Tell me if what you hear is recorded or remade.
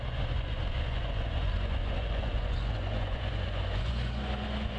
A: remade